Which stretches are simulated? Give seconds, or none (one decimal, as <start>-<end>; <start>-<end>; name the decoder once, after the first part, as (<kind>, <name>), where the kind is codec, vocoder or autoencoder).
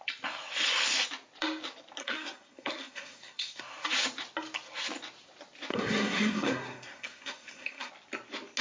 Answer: 2.0-3.6 (codec, SNAC); 5.7-7.9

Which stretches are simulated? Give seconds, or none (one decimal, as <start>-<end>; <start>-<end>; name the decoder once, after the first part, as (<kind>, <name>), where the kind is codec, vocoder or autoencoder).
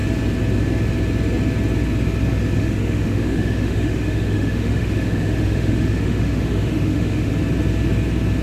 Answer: 2.6-7.3 (autoencoder, DAC-VAE)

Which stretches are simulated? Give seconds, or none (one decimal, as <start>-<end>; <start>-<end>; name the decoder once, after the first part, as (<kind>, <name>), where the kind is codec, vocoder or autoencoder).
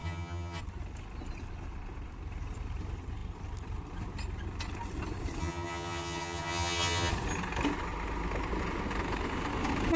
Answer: 0.0-0.6 (vocoder, HiFi-GAN); 5.4-7.1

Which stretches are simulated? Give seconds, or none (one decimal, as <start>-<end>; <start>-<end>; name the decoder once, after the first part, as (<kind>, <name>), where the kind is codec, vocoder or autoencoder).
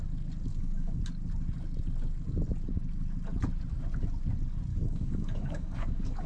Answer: 0.5-1.0 (codec, DAC); 4.7-6.3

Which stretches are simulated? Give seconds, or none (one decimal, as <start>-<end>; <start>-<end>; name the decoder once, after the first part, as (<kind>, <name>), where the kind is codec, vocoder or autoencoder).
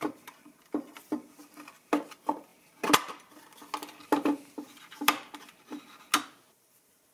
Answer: none